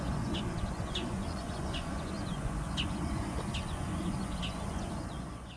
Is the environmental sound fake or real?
fake